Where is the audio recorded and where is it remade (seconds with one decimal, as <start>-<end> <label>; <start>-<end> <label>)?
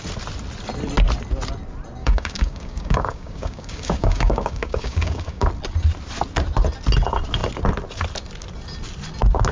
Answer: 0.0-2.0 recorded; 2.0-5.5 remade; 5.5-9.5 recorded